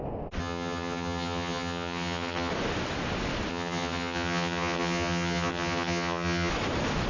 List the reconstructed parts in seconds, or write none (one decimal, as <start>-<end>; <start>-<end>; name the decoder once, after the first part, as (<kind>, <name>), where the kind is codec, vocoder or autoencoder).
0.4-2.5 (vocoder, HiFi-GAN); 3.5-6.5

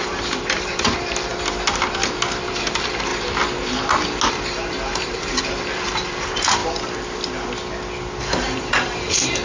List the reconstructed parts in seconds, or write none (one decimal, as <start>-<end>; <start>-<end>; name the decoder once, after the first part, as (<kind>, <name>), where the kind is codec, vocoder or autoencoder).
0.0-1.3 (vocoder, BigVGAN v2); 2.4-3.1; 4.3-6.6; 8.2-9.4

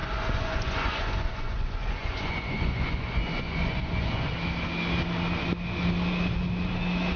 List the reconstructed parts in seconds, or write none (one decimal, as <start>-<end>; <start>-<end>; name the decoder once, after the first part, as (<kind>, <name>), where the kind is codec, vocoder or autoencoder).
0.0-4.3 (vocoder, Vocos)

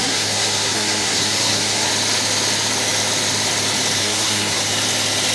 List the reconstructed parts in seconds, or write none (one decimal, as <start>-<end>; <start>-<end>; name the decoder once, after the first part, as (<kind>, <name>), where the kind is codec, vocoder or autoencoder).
0.0-1.9 (codec, SNAC); 4.0-4.6

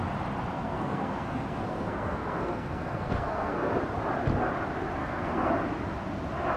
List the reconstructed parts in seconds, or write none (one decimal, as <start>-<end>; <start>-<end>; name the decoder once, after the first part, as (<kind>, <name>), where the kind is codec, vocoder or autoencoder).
0.5-3.7 (codec, SNAC); 5.0-5.5

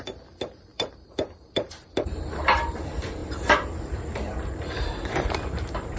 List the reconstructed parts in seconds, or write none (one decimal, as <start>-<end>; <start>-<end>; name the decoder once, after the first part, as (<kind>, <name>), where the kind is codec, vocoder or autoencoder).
0.7-2.8 (vocoder, BigVGAN v2); 3.2-6.0